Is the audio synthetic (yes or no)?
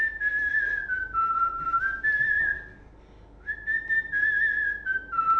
no